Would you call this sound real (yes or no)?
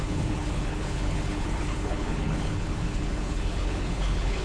no